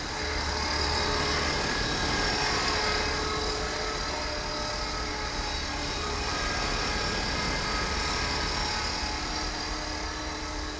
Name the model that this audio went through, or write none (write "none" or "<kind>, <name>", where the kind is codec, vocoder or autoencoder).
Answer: none